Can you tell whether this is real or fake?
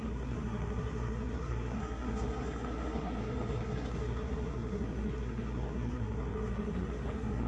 fake